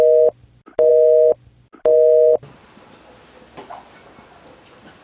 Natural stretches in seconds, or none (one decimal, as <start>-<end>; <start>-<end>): 0.0-5.0